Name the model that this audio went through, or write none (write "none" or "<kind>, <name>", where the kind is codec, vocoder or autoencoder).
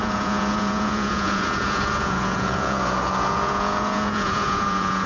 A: vocoder, Vocos